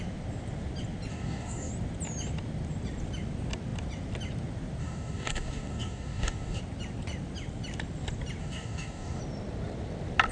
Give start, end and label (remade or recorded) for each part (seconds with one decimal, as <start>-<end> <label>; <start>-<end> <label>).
0.0-1.1 recorded; 1.1-1.7 remade; 1.7-4.8 recorded; 4.8-6.6 remade; 6.6-8.4 recorded; 8.4-9.2 remade; 9.2-10.3 recorded